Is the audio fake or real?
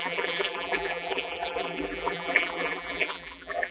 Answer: fake